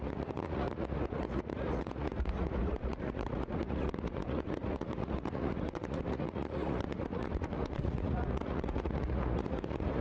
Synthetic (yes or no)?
yes